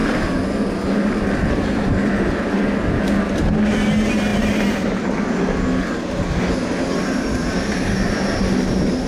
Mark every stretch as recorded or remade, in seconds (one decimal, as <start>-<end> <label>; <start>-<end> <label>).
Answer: 0.0-9.1 recorded